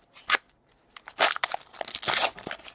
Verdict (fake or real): real